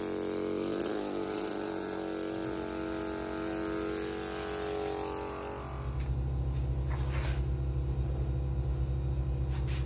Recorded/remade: recorded